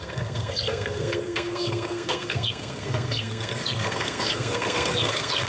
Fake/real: fake